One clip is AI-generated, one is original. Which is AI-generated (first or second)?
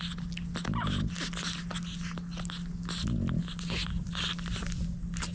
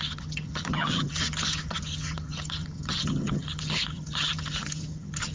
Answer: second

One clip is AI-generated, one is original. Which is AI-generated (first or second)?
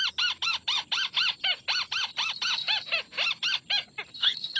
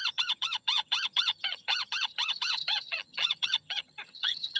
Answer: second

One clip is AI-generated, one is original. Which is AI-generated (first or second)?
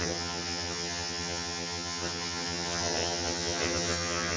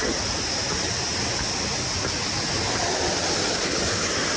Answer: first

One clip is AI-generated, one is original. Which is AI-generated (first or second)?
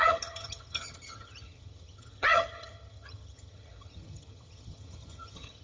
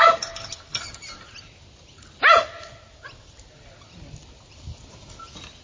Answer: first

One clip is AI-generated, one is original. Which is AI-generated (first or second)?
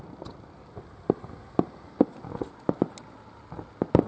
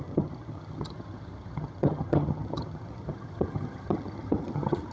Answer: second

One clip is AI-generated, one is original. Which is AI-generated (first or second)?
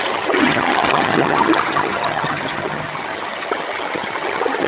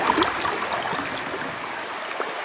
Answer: first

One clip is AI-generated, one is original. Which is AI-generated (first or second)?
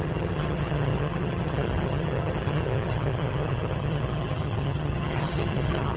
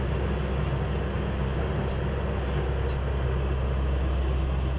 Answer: first